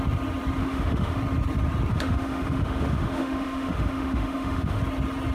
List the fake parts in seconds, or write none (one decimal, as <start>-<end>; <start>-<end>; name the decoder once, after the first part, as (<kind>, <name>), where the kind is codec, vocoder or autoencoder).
0.6-1.2 (autoencoder, DAC-VAE); 1.9-4.8

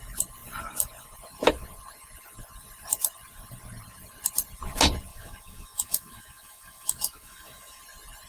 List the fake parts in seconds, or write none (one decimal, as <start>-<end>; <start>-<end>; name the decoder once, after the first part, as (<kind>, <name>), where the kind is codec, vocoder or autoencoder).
5.1-7.8 (autoencoder, DAC-VAE)